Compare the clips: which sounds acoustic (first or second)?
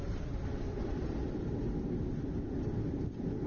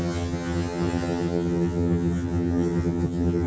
first